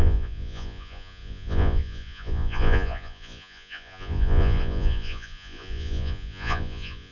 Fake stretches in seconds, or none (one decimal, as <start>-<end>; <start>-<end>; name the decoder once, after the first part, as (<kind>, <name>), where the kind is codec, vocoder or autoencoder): 0.0-7.1 (vocoder, Vocos)